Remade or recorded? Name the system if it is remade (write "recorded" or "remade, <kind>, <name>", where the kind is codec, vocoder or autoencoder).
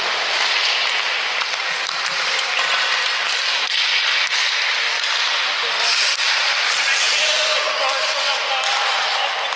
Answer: recorded